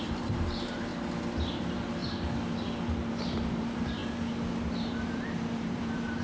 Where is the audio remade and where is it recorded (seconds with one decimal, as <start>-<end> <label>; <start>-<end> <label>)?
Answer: 0.0-0.9 remade; 0.9-1.6 recorded; 1.6-2.0 remade; 2.0-3.1 recorded; 3.1-4.0 remade; 4.0-4.7 recorded; 4.7-6.2 remade